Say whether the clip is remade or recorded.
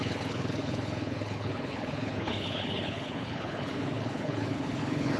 remade